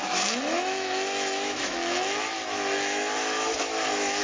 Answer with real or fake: fake